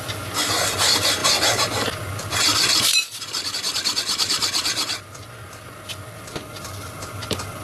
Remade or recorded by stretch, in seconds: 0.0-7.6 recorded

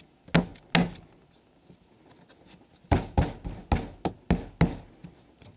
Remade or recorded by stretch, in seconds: 0.0-5.6 recorded

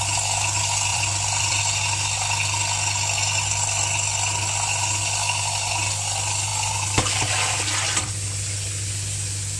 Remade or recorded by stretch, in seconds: 0.0-0.9 recorded; 0.9-1.6 remade; 1.6-9.6 recorded